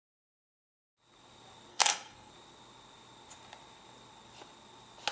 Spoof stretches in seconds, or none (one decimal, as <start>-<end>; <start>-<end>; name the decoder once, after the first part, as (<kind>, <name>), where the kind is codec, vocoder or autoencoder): 1.7-2.3 (codec, SNAC)